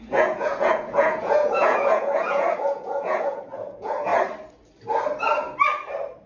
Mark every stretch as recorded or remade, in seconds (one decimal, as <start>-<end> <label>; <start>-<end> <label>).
0.0-4.1 remade; 4.1-6.3 recorded